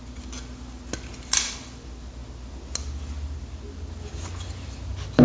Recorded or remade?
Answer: recorded